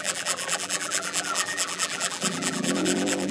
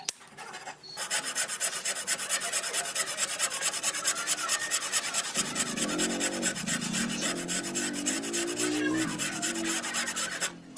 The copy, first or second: first